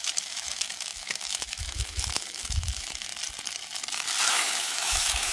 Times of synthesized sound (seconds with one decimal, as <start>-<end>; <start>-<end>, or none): 0.0-3.1; 4.3-5.3